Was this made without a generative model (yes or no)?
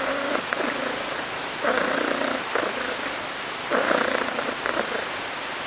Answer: yes